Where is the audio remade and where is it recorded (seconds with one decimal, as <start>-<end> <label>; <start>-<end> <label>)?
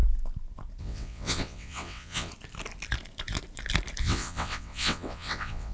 0.0-0.8 recorded; 0.8-2.3 remade; 2.3-4.0 recorded; 4.0-5.7 remade